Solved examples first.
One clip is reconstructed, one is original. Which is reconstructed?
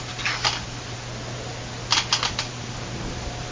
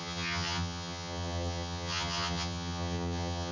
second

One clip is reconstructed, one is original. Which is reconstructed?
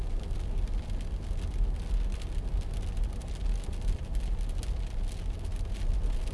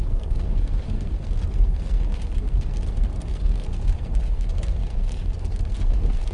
second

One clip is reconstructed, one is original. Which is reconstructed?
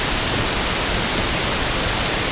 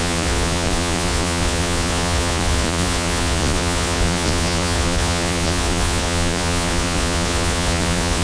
second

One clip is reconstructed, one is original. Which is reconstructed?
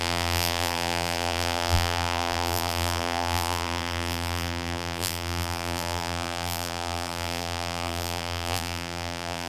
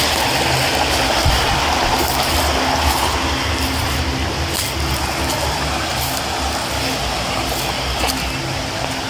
first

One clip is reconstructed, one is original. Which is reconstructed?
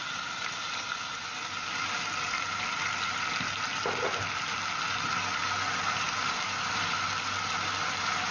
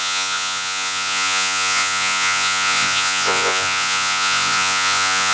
second